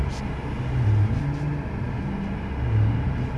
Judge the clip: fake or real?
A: real